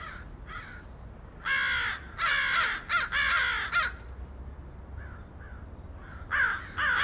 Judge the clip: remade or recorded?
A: recorded